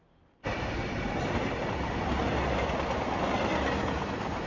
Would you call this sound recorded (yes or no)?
yes